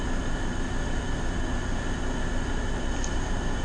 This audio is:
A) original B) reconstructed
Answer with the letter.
A